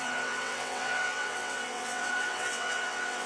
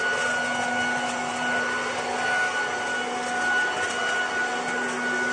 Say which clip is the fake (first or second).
first